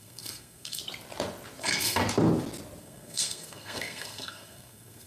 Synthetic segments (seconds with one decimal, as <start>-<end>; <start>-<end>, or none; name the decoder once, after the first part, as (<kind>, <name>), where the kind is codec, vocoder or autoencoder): 0.0-0.8 (codec, SNAC); 1.6-2.0; 2.8-5.1